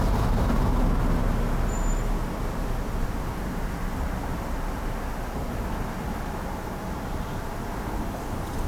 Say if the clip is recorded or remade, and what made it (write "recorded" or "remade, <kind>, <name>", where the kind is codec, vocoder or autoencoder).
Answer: recorded